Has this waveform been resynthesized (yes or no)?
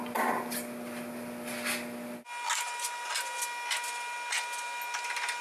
no